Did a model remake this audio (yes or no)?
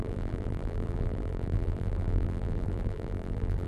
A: yes